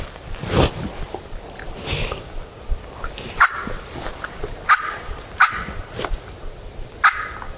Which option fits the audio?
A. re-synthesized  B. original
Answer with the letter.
A